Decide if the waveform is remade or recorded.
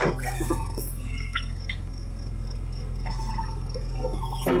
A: remade